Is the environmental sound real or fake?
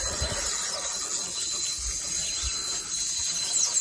real